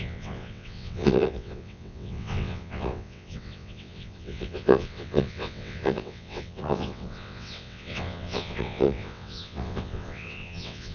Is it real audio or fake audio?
fake